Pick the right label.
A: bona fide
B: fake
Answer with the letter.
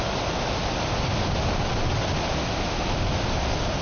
A